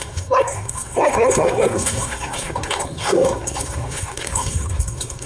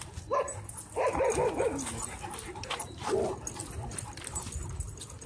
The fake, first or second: first